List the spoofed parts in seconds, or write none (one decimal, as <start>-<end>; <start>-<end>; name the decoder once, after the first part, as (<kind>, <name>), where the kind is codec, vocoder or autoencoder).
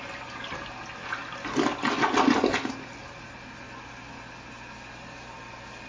none